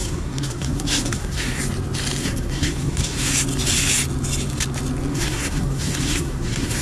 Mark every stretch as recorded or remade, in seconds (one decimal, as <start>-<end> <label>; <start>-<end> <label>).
0.0-1.6 remade; 1.6-2.2 recorded; 2.2-3.3 remade; 3.3-5.1 recorded; 5.1-6.8 remade